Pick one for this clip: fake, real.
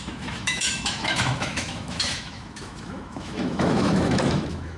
fake